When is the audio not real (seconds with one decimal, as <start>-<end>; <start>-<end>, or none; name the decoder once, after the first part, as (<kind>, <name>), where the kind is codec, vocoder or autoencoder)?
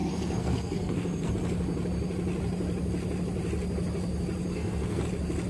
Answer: 0.0-1.3 (codec, SNAC); 4.5-5.0